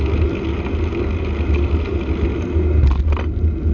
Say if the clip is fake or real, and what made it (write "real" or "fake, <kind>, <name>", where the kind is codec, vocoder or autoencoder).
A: real